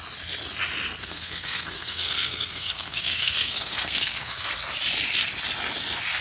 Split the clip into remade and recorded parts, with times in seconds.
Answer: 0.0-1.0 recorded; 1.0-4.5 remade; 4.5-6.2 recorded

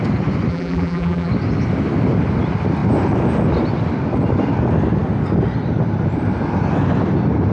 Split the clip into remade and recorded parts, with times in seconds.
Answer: 0.0-0.5 recorded; 0.5-1.3 remade; 1.3-7.5 recorded